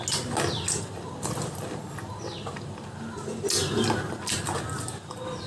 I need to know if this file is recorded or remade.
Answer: recorded